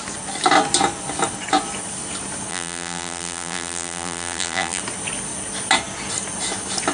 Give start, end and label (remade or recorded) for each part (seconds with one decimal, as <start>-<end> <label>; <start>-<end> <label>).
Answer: 0.0-2.5 recorded; 2.5-4.8 remade; 4.8-6.9 recorded